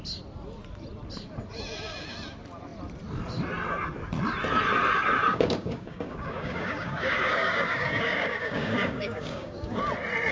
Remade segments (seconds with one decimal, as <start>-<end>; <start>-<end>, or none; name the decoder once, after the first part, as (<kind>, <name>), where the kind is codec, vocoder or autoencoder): 5.3-9.8 (codec, DAC)